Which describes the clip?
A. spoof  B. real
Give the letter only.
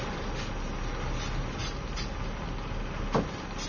B